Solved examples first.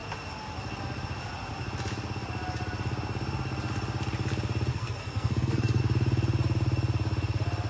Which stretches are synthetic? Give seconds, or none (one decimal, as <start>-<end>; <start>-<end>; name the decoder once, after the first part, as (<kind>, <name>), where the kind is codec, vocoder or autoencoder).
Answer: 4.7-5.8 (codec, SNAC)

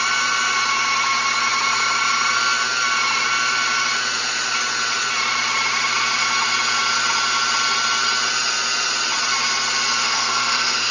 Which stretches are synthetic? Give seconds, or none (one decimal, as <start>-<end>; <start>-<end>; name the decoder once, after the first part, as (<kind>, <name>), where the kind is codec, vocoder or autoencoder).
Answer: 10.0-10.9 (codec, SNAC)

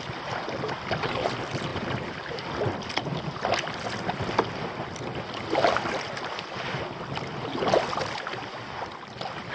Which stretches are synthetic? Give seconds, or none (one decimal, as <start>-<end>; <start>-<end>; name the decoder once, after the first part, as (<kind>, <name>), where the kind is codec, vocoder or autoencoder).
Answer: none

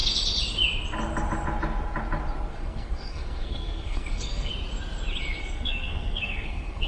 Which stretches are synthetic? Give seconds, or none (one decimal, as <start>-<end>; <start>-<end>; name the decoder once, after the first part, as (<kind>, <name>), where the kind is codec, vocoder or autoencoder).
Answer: 2.5-4.5 (codec, SNAC); 5.4-6.9

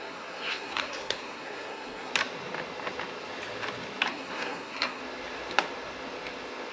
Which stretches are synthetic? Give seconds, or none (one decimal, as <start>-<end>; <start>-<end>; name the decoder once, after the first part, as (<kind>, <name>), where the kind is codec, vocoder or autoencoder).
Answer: 0.0-2.1 (codec, SNAC); 4.1-5.0

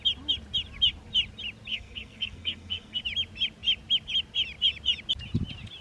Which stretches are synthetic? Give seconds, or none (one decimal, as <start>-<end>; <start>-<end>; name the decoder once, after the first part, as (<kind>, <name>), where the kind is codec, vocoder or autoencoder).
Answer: 1.7-3.0 (codec, SNAC)

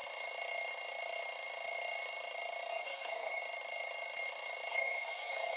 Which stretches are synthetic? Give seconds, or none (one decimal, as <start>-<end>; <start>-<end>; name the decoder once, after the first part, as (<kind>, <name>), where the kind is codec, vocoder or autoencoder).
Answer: 2.7-3.4 (codec, SNAC); 4.7-5.6